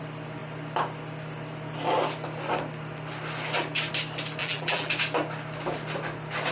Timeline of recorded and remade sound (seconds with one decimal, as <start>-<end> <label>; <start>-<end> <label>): 0.0-4.4 recorded; 4.4-4.9 remade; 4.9-6.5 recorded

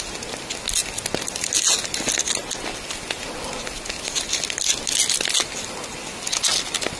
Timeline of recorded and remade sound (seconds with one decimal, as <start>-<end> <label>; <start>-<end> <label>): 0.0-7.0 recorded

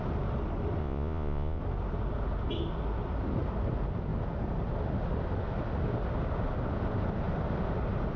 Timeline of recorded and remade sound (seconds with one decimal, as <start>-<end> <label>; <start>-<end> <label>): 0.0-0.8 recorded; 0.8-1.6 remade; 1.6-8.2 recorded

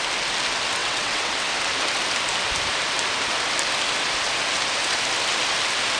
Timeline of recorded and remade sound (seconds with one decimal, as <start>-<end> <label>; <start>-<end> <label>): 0.0-0.8 recorded; 0.8-1.5 remade; 1.5-6.0 recorded

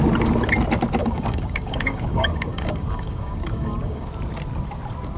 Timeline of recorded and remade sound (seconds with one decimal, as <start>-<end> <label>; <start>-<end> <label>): 0.0-1.0 recorded; 1.0-4.1 remade; 4.1-5.2 recorded